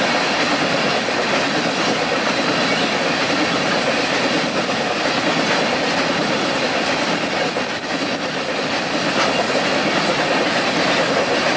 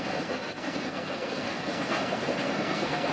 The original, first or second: first